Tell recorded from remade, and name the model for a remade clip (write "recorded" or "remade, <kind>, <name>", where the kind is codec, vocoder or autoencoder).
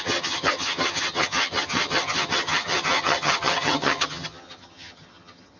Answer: remade, vocoder, HiFi-GAN